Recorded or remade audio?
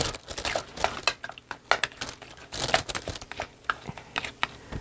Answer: recorded